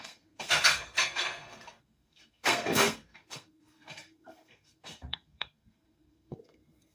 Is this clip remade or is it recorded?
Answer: remade